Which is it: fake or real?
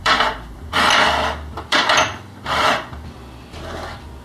fake